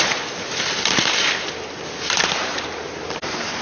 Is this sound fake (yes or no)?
no